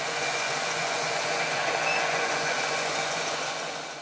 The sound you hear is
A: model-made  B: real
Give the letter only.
A